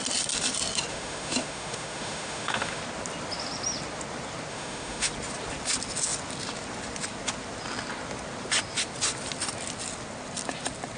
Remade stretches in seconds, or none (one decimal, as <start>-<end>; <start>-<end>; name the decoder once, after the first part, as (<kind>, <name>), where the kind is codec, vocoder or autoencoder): 0.9-2.8 (autoencoder, DAC-VAE); 4.5-5.1

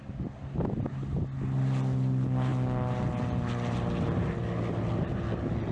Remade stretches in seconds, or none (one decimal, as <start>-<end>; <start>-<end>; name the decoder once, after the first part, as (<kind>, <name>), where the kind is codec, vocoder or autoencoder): none

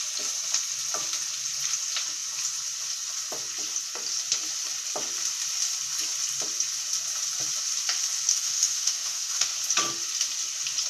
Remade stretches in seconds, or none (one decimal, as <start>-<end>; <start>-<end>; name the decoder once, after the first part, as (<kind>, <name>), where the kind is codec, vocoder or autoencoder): 8.3-9.5 (autoencoder, DAC-VAE)

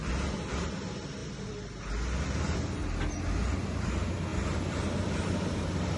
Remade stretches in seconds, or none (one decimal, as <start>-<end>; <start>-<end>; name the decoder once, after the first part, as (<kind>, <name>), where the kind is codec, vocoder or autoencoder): none

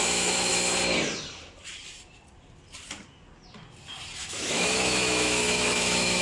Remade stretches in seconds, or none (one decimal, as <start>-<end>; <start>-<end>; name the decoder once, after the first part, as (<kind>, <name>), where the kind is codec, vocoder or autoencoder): 0.0-0.5 (autoencoder, DAC-VAE); 4.2-6.2

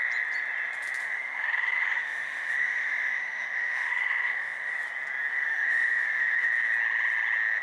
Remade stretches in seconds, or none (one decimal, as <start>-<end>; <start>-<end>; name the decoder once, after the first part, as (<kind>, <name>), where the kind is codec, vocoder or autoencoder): 1.0-4.7 (autoencoder, DAC-VAE); 5.3-6.5

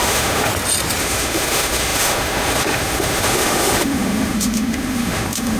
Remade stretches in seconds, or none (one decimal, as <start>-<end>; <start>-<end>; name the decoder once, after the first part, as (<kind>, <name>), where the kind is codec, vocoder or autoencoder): 0.0-0.5 (autoencoder, DAC-VAE); 1.0-5.6

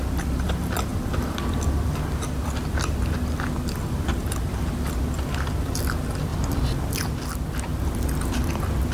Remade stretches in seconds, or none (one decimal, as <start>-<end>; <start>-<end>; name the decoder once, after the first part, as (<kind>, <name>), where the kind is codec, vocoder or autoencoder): none